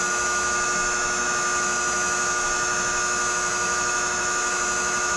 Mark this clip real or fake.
fake